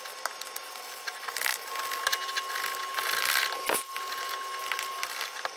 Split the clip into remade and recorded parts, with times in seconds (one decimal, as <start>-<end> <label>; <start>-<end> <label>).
0.0-5.6 recorded